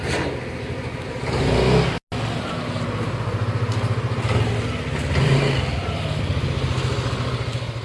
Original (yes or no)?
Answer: yes